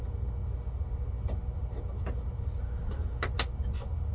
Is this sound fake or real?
real